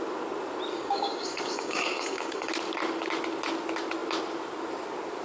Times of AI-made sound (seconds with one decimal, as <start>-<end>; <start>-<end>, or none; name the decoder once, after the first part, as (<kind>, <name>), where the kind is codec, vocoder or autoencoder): 0.7-2.5 (codec, DAC)